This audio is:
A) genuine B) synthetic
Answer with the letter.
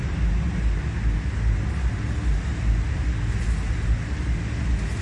A